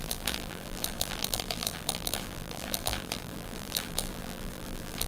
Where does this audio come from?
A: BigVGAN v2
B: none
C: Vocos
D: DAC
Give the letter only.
A